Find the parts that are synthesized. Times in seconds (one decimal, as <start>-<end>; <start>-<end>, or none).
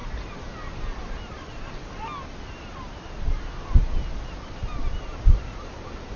none